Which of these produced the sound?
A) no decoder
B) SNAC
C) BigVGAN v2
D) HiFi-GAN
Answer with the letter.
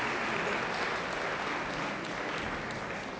A